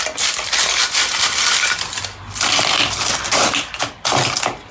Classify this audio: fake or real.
real